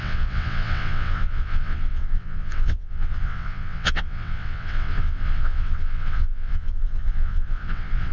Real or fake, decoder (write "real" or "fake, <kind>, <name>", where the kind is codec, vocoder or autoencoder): fake, vocoder, WaveNeXt